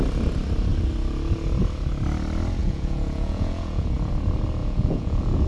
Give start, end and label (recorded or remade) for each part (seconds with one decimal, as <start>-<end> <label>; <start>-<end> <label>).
0.0-2.6 recorded; 2.6-4.1 remade; 4.1-4.6 recorded; 4.6-5.5 remade